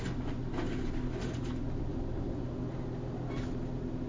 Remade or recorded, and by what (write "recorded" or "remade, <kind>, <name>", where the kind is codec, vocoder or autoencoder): recorded